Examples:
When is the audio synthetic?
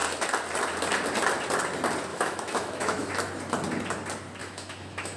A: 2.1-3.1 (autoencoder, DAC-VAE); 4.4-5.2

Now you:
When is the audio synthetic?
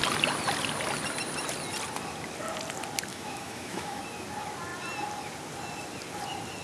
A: 3.1-4.0 (autoencoder, DAC-VAE)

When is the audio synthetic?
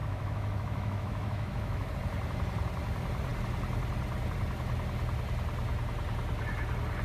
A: 0.0-1.9 (autoencoder, DAC-VAE)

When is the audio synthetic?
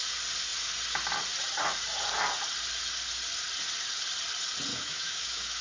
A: 4.7-5.6 (autoencoder, DAC-VAE)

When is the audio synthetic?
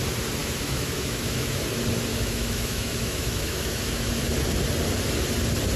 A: 0.4-1.6 (autoencoder, DAC-VAE); 2.1-4.1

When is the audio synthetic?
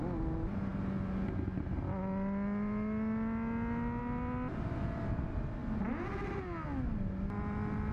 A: none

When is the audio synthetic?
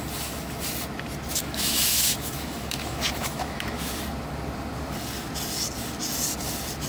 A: 1.3-4.0 (autoencoder, DAC-VAE)